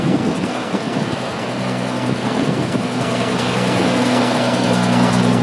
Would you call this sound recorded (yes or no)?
no